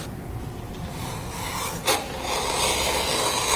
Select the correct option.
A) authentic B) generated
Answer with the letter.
A